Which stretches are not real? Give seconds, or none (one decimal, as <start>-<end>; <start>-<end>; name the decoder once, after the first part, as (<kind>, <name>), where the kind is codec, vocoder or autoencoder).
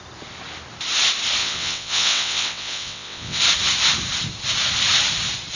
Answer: 1.4-3.4 (vocoder, WaveNeXt)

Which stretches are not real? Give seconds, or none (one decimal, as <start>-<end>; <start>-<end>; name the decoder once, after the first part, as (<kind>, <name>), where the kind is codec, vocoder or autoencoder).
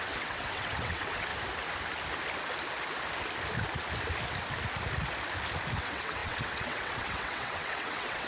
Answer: 0.0-1.3 (vocoder, WaveNeXt); 5.8-8.3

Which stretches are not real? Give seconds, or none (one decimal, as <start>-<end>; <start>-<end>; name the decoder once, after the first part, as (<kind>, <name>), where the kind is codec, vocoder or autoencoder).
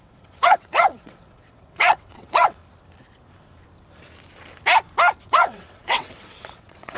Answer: 0.0-2.6 (vocoder, WaveNeXt); 5.2-7.0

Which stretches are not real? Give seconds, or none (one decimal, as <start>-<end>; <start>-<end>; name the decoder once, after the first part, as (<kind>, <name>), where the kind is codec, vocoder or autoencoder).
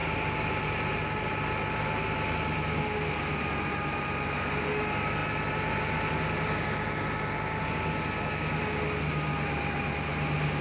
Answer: none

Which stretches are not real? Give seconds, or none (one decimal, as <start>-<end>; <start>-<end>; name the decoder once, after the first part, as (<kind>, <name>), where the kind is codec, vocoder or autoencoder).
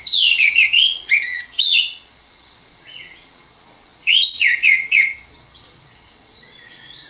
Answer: 0.0-7.1 (vocoder, WaveNeXt)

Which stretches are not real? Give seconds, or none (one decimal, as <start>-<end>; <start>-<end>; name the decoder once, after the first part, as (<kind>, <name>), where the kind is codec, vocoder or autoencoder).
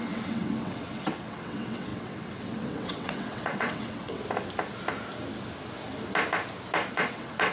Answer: 0.0-4.2 (vocoder, WaveNeXt); 6.9-7.5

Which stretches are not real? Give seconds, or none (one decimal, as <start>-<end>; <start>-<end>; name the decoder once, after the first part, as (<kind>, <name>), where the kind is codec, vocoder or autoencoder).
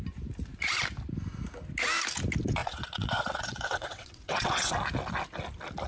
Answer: 2.6-4.7 (vocoder, WaveNeXt)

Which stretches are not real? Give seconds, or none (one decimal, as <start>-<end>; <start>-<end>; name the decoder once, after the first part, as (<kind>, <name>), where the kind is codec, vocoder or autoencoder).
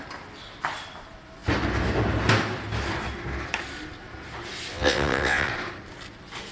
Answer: 4.7-5.5 (vocoder, WaveNeXt)